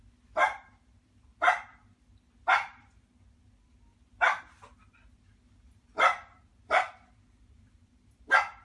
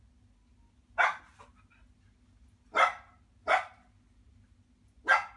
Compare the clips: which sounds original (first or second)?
second